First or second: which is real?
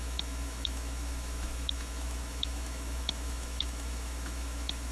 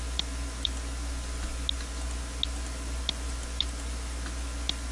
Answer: second